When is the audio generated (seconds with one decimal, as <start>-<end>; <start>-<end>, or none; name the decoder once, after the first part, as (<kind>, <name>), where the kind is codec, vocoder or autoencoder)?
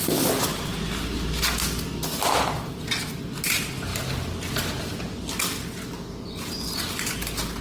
none